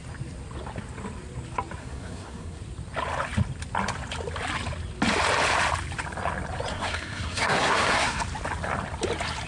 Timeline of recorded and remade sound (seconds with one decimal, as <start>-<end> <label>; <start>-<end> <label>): 0.0-1.8 recorded; 1.8-2.6 remade; 2.6-6.7 recorded; 6.7-8.2 remade; 8.2-9.5 recorded